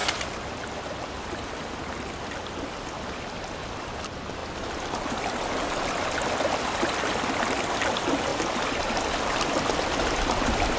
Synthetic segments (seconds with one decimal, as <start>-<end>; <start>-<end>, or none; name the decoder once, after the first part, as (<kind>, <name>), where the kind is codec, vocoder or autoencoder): none